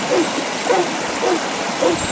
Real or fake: real